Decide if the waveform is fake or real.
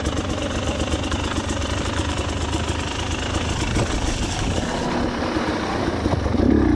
real